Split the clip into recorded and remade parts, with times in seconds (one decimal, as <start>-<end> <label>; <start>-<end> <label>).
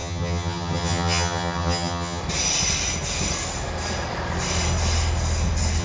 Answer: 0.0-2.2 remade; 2.2-5.8 recorded